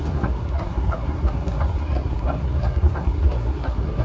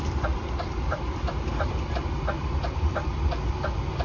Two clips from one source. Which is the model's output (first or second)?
first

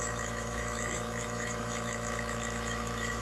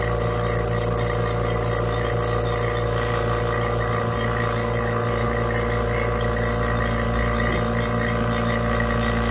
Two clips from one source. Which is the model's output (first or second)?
first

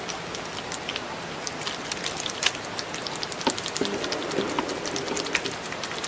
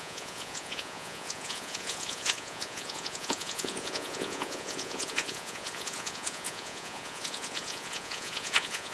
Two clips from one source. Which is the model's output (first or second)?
second